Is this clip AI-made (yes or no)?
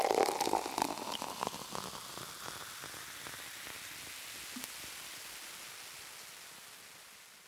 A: no